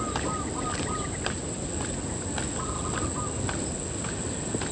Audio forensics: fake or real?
real